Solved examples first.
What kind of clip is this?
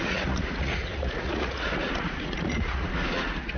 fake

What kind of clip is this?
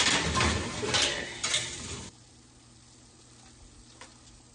real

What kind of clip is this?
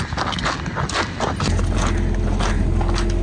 real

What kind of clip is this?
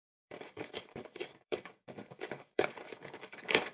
fake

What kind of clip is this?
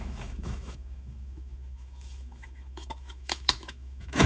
fake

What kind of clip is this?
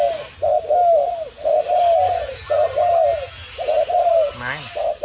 real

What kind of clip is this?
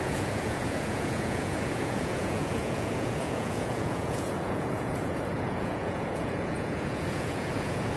fake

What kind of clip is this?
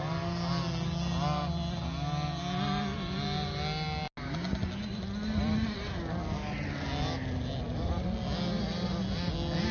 real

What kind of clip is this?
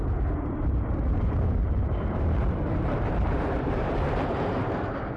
fake